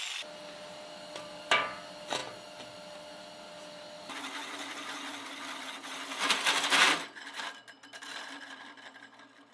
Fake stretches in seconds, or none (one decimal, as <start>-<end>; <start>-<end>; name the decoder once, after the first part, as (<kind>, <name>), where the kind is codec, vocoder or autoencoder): none